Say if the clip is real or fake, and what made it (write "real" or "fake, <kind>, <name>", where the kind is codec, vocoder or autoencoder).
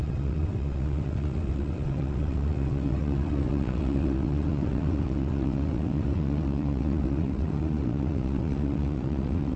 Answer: fake, vocoder, WaveNeXt